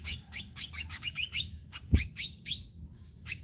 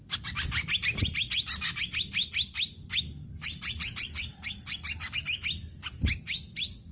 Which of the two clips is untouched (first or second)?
second